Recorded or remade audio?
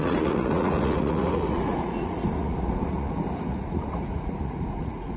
remade